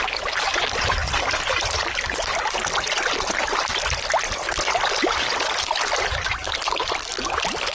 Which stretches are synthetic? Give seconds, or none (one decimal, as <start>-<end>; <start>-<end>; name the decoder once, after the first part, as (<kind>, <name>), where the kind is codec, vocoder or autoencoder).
none